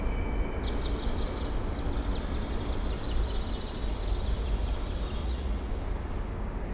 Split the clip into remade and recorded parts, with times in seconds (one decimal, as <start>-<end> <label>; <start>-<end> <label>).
0.0-5.2 recorded; 5.2-5.7 remade; 5.7-6.7 recorded